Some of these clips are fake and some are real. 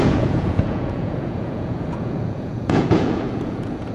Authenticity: fake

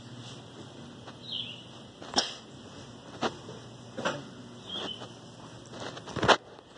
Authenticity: real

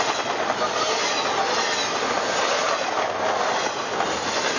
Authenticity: real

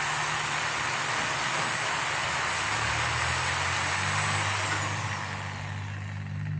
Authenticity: real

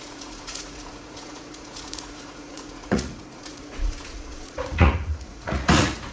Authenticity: fake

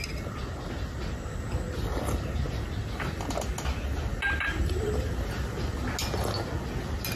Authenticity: real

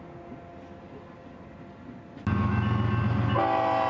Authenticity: real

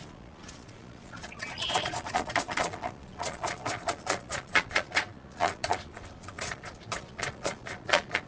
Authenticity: fake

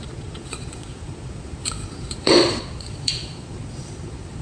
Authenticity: fake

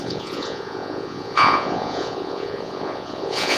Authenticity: fake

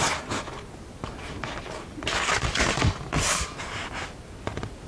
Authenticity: real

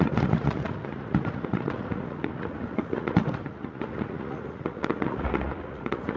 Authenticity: fake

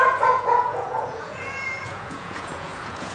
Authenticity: fake